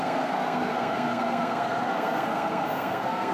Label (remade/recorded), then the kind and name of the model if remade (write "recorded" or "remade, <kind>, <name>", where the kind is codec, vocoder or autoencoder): remade, codec, SNAC